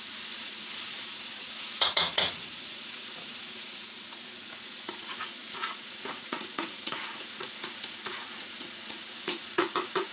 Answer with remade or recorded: remade